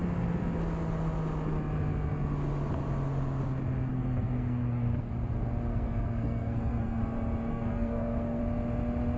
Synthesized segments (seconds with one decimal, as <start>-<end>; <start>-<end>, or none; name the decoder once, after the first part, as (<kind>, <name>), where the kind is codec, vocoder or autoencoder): 3.9-5.1 (codec, SNAC); 5.7-7.0; 7.5-8.4